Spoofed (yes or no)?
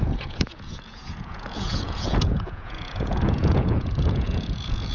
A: yes